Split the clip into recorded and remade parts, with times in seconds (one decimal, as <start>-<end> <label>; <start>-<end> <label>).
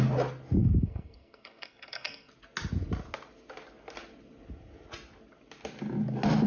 0.0-0.6 recorded; 0.6-2.3 remade; 2.3-6.5 recorded